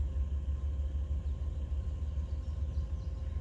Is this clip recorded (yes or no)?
yes